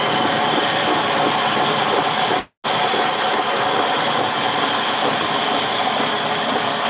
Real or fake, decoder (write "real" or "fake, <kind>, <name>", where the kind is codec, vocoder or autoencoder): real